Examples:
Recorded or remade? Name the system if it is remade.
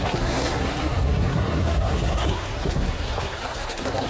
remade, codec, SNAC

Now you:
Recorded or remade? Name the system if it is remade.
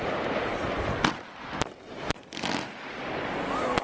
remade, vocoder, BigVGAN v2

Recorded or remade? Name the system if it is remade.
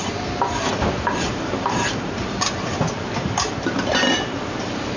remade, vocoder, BigVGAN v2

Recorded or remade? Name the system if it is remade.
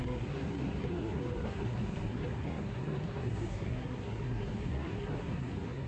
remade, codec, SNAC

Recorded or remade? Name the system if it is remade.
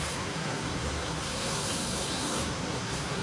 remade, codec, SNAC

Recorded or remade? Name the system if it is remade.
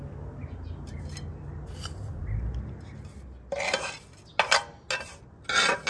recorded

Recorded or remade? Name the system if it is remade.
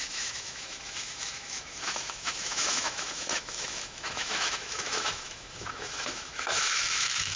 remade, autoencoder, DAC-VAE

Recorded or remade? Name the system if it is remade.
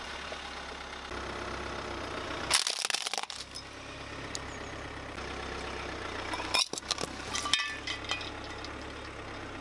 recorded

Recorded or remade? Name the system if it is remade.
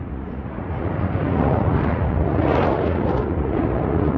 remade, vocoder, Vocos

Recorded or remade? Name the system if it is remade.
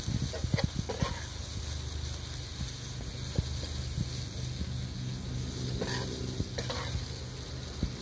recorded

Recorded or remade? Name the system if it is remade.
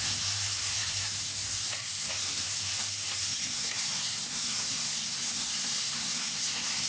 remade, codec, SNAC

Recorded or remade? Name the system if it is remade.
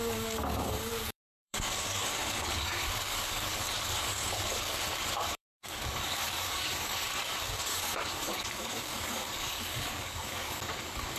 remade, codec, DAC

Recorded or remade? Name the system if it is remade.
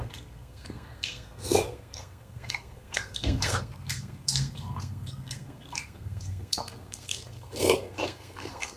remade, codec, SNAC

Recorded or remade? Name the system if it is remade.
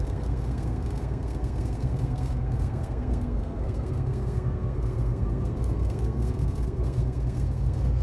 remade, codec, SNAC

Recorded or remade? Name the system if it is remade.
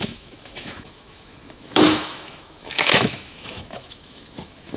remade, autoencoder, DAC-VAE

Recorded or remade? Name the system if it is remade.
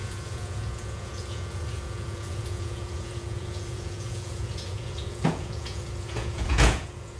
remade, vocoder, Vocos